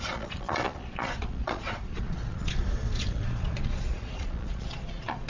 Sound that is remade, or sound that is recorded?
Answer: remade